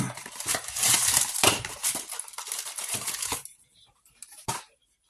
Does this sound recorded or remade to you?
remade